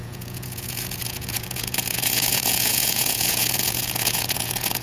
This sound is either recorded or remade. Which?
remade